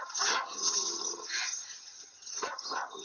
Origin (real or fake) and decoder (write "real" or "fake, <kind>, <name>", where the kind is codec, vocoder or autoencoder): fake, vocoder, HiFi-GAN